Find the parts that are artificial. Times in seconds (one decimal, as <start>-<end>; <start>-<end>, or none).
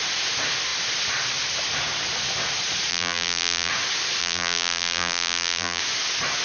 2.9-3.7; 4.2-5.8